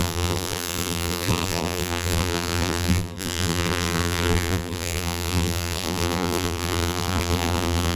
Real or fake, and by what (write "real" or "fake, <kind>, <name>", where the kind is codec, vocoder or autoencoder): fake, vocoder, BigVGAN v2